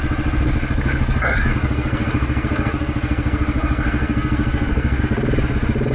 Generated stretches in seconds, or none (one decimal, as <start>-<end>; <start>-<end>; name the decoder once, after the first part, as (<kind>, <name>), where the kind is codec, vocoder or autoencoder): 1.5-5.0 (codec, SNAC)